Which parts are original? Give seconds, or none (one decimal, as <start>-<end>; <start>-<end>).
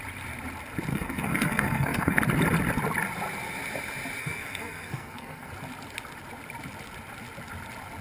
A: 0.0-0.9; 2.2-4.2; 5.5-8.0